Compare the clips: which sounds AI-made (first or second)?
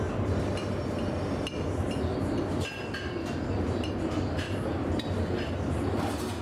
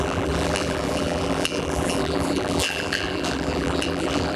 second